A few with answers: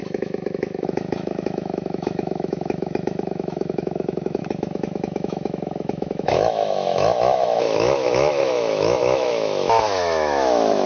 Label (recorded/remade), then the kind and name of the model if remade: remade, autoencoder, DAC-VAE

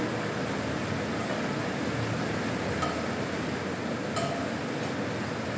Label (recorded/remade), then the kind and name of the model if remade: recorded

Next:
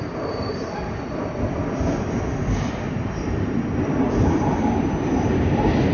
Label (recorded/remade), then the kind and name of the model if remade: remade, vocoder, BigVGAN v2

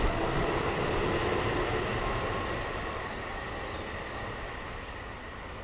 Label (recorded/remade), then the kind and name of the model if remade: remade, vocoder, BigVGAN v2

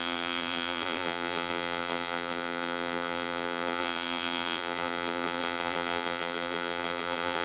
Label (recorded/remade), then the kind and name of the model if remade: remade, vocoder, BigVGAN v2